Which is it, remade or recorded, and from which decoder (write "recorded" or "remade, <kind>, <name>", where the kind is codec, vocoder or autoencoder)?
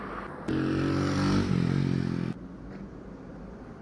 recorded